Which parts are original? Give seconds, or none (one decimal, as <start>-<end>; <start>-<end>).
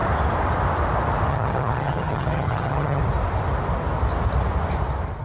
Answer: 0.0-1.3; 3.0-5.2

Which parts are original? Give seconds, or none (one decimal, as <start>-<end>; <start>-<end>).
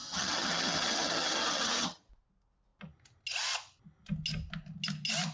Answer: 2.1-5.3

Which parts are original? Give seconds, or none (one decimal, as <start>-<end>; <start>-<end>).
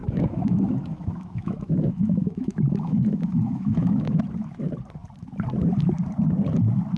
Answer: 4.2-7.0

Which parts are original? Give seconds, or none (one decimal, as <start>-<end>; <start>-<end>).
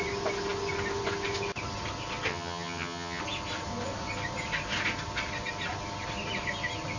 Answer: 0.0-2.3; 3.2-7.0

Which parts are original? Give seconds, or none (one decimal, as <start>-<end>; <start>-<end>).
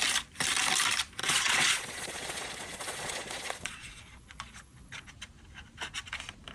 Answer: 0.0-1.2; 5.1-6.5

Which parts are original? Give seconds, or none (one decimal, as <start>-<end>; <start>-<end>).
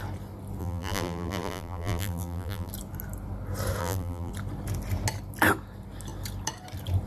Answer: 0.0-0.6; 2.7-3.8; 4.3-7.1